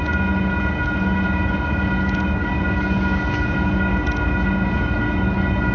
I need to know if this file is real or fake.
real